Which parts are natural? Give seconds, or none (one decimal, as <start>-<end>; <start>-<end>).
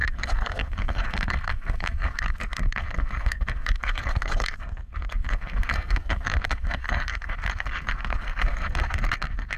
none